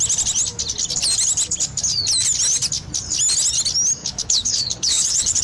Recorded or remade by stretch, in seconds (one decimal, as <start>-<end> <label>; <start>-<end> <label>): 0.0-4.0 recorded; 4.0-5.4 remade